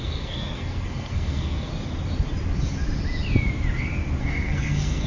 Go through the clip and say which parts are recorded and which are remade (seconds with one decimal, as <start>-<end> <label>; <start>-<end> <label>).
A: 0.0-1.7 remade; 1.7-4.2 recorded; 4.2-5.1 remade